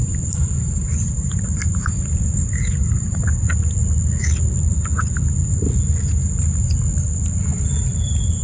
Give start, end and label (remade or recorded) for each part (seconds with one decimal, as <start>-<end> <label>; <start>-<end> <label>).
0.0-3.2 remade; 3.2-7.5 recorded; 7.5-8.4 remade